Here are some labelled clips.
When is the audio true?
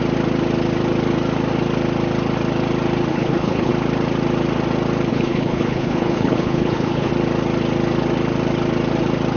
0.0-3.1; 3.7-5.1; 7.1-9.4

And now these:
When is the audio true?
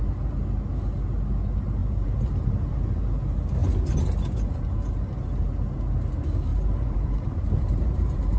0.0-1.8; 2.5-6.5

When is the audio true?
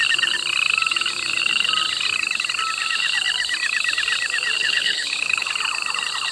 0.0-4.6; 5.5-6.3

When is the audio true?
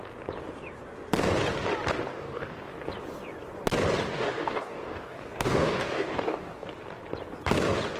0.0-2.1; 2.7-4.1; 6.7-8.0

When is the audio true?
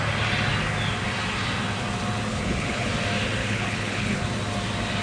0.0-2.3; 2.9-3.4; 4.2-5.0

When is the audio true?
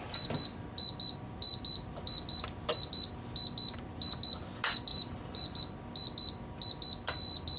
0.0-4.9; 5.6-7.6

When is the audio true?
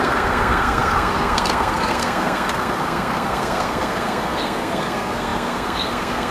none